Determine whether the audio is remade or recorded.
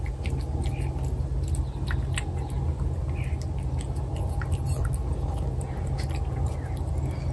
recorded